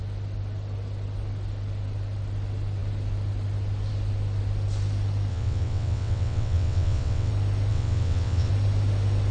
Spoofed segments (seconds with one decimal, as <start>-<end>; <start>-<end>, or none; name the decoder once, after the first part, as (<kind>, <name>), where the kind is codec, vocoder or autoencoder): 5.3-7.3 (vocoder, WaveNeXt); 7.7-8.5